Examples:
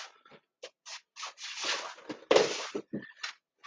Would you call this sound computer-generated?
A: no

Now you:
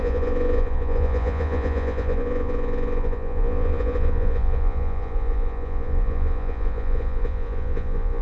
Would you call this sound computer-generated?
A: yes